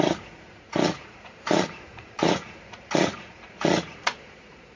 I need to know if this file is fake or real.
fake